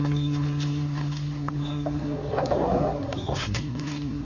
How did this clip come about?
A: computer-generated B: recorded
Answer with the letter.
A